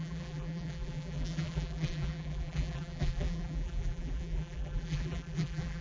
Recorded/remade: remade